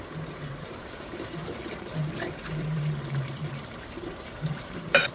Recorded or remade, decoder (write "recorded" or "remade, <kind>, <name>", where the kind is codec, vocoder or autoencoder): remade, vocoder, BigVGAN v2